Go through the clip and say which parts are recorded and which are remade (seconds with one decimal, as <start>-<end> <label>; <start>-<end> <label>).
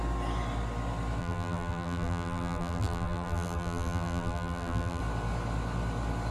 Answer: 0.0-1.2 recorded; 1.2-5.0 remade; 5.0-6.3 recorded